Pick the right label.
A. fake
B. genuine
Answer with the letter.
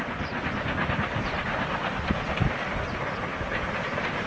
B